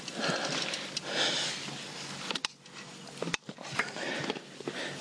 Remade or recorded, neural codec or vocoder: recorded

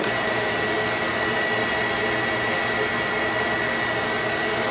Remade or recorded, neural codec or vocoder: recorded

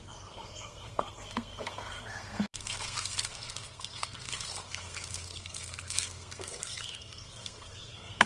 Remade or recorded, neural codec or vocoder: remade, codec, SNAC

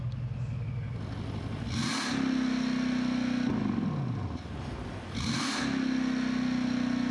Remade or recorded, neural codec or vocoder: recorded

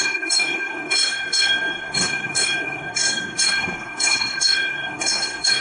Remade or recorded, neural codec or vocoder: remade, codec, SNAC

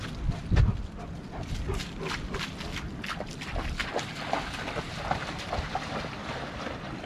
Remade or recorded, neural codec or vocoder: recorded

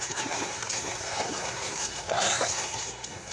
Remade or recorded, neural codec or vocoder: remade, codec, SNAC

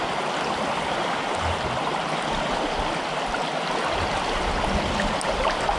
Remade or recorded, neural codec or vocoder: recorded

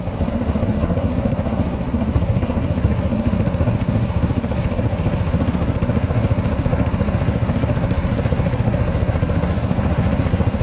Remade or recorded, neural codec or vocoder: remade, codec, SNAC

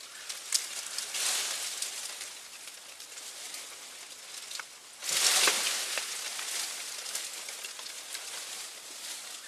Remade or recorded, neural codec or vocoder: recorded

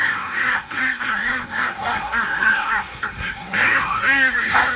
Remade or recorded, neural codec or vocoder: remade, codec, SNAC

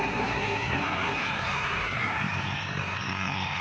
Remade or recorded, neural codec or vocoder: remade, codec, SNAC